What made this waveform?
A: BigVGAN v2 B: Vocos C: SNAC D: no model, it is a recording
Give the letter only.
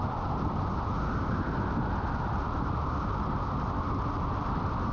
D